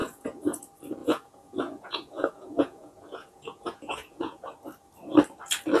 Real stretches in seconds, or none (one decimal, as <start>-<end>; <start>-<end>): 0.6-1.0; 4.5-5.8